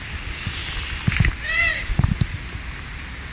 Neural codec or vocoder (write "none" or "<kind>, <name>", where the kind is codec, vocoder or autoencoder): none